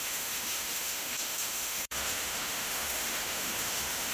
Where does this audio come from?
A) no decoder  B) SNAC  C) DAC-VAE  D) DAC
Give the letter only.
C